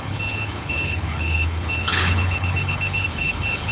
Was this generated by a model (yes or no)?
yes